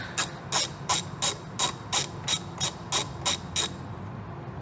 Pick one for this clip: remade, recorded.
recorded